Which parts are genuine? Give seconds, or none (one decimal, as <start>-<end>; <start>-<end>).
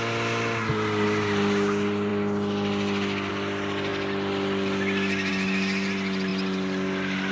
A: 0.0-7.3